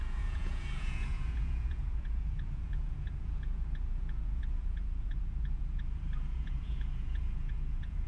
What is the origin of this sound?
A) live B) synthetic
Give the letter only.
B